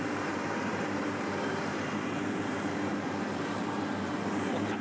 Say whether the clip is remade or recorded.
remade